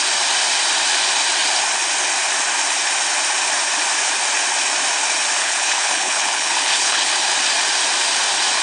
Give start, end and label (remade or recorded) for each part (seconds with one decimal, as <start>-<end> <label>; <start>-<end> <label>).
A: 0.0-5.4 recorded; 5.4-7.1 remade; 7.1-8.6 recorded